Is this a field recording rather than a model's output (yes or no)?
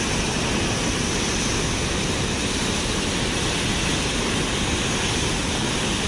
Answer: yes